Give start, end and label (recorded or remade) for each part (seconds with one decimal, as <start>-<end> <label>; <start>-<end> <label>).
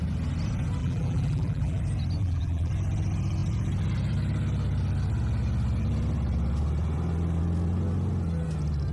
0.0-0.8 recorded; 0.8-1.8 remade; 1.8-2.2 recorded; 2.2-2.7 remade; 2.7-8.9 recorded